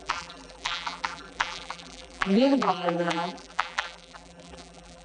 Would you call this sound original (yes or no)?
no